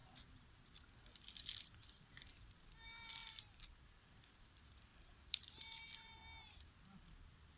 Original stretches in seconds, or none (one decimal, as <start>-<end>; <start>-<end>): 0.0-4.9; 6.2-7.6